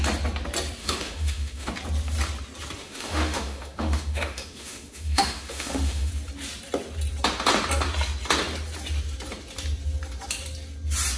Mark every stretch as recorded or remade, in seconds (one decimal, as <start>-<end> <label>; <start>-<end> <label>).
0.0-0.8 recorded; 0.8-1.7 remade; 1.7-2.8 recorded; 2.8-6.1 remade; 6.1-11.2 recorded